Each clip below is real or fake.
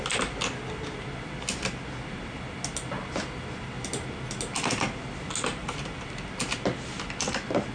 real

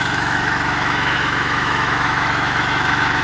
fake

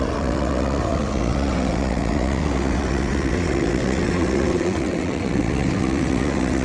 fake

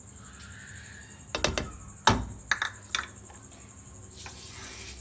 real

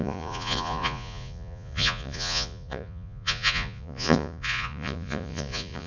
fake